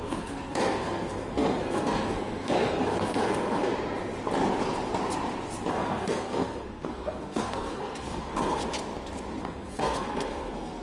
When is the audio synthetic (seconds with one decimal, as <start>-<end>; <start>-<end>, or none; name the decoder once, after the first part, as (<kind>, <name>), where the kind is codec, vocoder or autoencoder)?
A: 0.0-3.7 (codec, SNAC); 5.7-8.6; 9.4-10.8